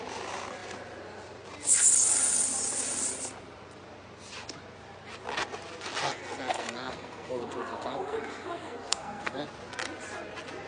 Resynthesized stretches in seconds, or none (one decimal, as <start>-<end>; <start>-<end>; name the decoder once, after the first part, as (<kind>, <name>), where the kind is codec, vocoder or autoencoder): 6.1-9.4 (codec, SNAC)